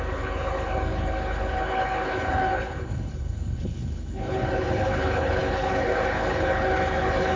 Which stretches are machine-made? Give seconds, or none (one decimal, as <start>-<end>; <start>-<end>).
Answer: 0.0-7.4